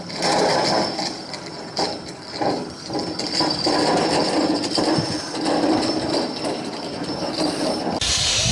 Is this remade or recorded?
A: recorded